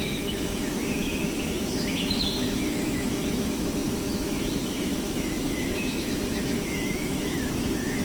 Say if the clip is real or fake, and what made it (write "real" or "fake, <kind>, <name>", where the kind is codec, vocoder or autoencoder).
fake, autoencoder, DAC-VAE